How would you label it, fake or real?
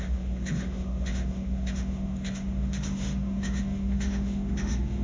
fake